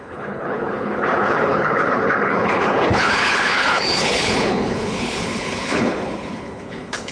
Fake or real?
fake